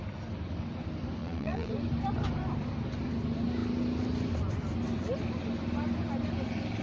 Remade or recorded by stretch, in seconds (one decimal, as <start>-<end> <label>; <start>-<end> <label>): 0.0-1.2 recorded; 1.2-1.7 remade; 1.7-6.8 recorded